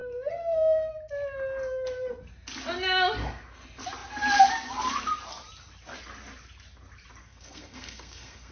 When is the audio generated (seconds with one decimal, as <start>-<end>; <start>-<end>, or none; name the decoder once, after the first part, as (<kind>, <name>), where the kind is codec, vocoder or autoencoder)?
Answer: 0.0-0.9 (codec, SNAC); 7.2-8.5